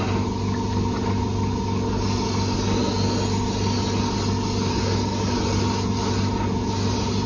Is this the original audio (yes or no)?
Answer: yes